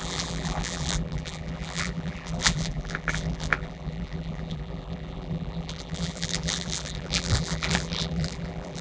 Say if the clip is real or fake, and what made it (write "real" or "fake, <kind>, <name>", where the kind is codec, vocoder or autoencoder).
fake, vocoder, BigVGAN v2